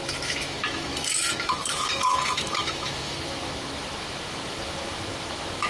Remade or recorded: remade